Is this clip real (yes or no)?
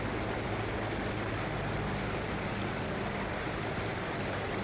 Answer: yes